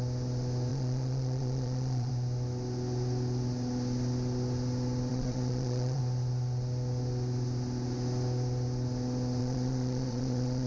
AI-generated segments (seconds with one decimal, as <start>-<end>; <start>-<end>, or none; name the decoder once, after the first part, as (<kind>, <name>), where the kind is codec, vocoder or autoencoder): 0.7-2.1 (vocoder, Vocos); 5.1-6.0; 9.4-10.7